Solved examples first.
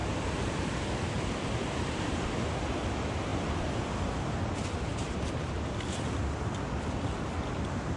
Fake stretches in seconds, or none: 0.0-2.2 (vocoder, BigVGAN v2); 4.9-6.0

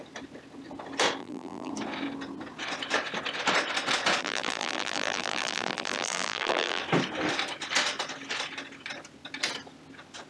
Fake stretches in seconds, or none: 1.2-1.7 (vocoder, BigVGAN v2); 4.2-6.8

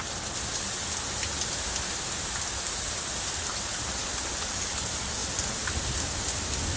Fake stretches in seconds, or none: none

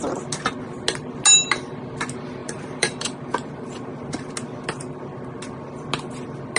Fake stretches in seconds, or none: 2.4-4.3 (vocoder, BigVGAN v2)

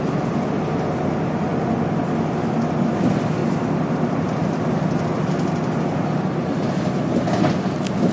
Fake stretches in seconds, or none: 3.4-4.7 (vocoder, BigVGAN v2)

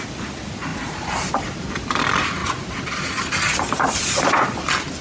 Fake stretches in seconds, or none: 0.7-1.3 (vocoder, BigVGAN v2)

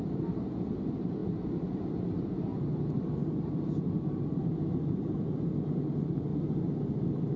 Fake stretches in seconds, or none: 0.0-6.3 (vocoder, BigVGAN v2)